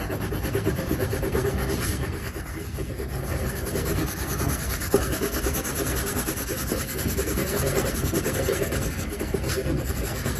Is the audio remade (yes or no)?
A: yes